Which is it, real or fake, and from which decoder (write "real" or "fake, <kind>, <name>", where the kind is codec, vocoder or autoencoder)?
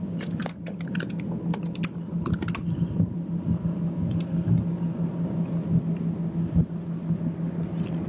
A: real